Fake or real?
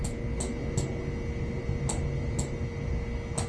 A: real